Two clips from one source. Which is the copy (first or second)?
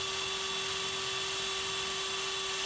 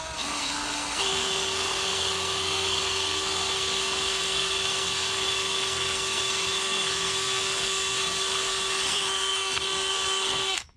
second